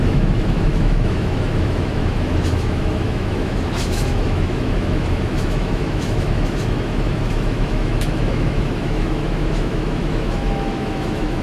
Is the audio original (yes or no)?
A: no